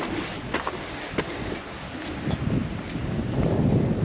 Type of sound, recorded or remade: recorded